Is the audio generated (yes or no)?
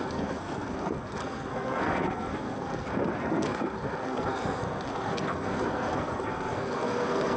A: yes